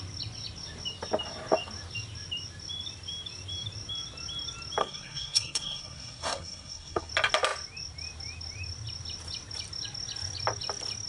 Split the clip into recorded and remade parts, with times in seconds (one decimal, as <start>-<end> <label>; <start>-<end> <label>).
0.0-4.8 recorded; 4.8-7.1 remade; 7.1-11.1 recorded